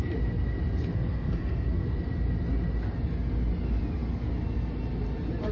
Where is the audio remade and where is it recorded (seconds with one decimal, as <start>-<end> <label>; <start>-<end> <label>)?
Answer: 0.0-0.9 recorded; 0.9-2.0 remade; 2.0-5.5 recorded